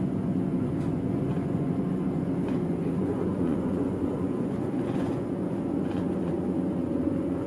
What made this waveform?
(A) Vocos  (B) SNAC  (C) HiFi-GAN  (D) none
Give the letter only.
A